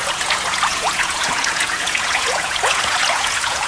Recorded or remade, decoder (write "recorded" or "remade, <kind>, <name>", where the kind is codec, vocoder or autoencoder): remade, vocoder, Vocos